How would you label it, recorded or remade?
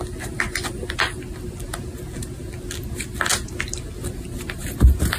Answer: recorded